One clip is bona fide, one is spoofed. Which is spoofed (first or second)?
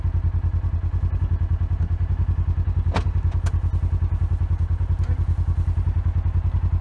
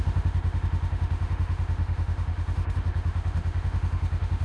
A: second